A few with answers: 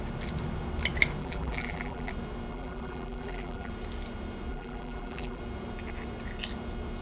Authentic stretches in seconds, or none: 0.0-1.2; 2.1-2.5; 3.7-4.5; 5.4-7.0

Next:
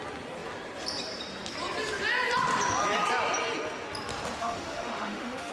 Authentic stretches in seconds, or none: 0.0-4.4

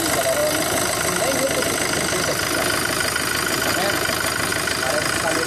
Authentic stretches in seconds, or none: 0.0-5.5